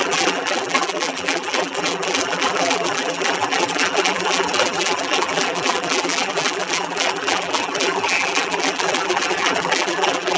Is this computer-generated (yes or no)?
yes